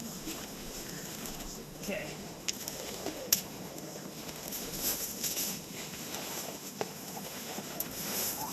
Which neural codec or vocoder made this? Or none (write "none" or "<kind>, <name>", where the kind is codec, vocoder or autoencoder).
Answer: autoencoder, DAC-VAE